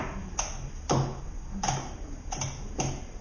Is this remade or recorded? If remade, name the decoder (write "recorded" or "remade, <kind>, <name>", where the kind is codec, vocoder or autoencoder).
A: recorded